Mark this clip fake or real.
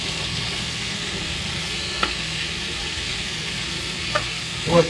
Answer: fake